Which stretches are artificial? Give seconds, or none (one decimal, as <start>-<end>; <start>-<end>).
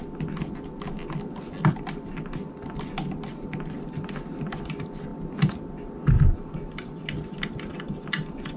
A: none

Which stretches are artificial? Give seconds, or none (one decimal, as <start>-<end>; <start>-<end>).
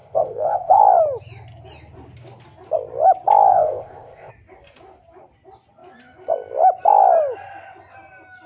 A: 0.0-0.8; 3.5-4.3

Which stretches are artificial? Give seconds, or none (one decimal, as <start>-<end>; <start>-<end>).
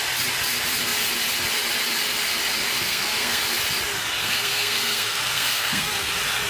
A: 2.8-3.4; 4.2-6.1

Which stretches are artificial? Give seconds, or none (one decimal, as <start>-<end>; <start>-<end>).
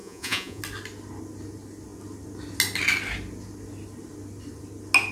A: 0.0-0.6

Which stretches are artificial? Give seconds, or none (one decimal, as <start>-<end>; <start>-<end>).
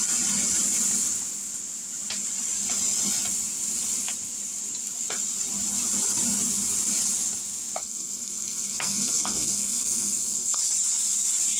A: 7.8-10.6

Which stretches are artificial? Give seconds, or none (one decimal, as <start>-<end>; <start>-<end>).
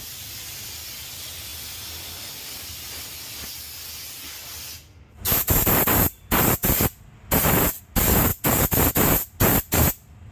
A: none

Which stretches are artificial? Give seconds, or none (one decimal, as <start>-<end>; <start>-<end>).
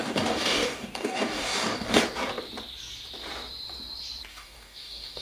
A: 0.0-2.0; 4.3-5.2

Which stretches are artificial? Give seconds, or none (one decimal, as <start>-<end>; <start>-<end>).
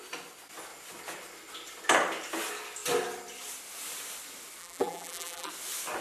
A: 4.6-5.5